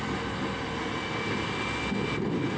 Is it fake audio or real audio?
real